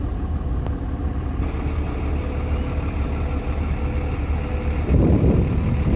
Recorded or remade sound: recorded